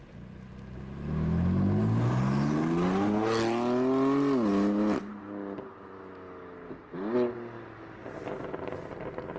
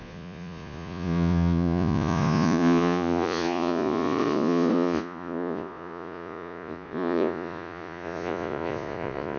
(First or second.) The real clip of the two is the first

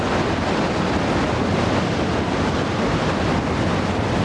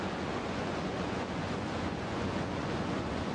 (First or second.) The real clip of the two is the first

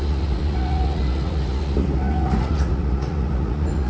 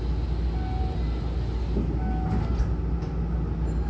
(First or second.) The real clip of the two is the second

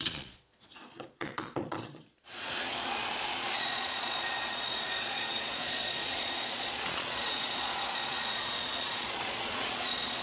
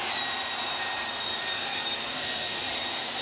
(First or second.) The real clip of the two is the second